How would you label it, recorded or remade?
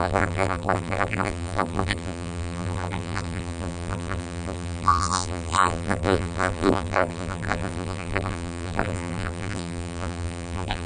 remade